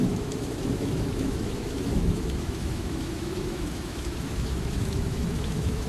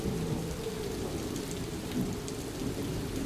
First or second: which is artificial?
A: first